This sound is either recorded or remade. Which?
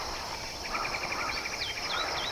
remade